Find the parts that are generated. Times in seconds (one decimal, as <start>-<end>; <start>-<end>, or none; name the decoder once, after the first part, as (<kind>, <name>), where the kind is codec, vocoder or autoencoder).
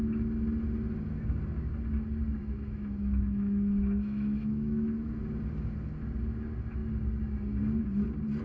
2.4-5.2 (autoencoder, DAC-VAE)